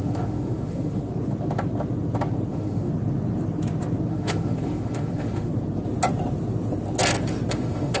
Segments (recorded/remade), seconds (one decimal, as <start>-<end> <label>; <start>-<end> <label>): 0.0-1.0 remade; 1.0-2.5 recorded; 2.5-2.9 remade; 2.9-4.1 recorded; 4.1-5.5 remade; 5.5-7.5 recorded; 7.5-8.0 remade